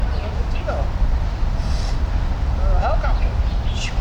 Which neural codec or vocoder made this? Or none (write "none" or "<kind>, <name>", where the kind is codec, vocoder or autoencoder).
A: none